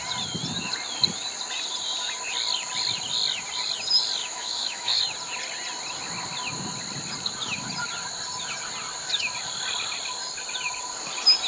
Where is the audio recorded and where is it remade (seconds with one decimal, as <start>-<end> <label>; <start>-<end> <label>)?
0.0-4.2 recorded; 4.2-5.0 remade; 5.0-11.5 recorded